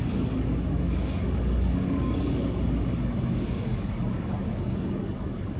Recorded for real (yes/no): no